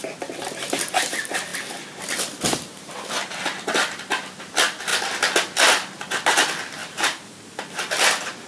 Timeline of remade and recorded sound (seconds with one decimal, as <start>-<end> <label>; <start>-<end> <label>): 0.0-6.8 recorded; 6.8-7.6 remade; 7.6-8.5 recorded